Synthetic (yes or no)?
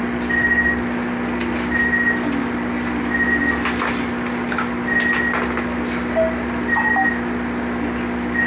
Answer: no